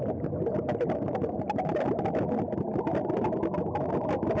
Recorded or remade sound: recorded